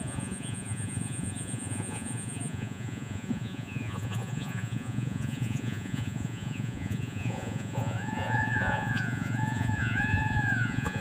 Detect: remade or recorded remade